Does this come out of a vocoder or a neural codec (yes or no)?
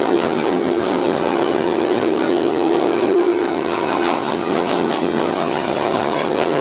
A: yes